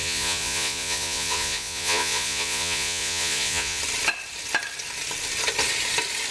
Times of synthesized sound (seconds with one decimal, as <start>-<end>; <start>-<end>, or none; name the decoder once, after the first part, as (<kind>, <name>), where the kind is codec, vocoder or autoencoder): 0.0-3.8 (vocoder, Vocos)